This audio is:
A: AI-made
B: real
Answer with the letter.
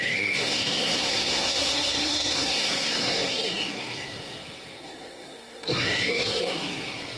A